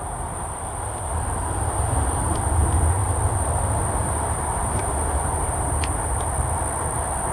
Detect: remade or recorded recorded